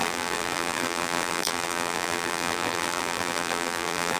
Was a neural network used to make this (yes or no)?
yes